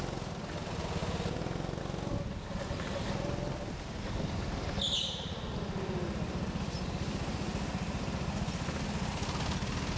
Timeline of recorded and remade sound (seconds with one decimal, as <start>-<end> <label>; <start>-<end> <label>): 0.0-10.0 recorded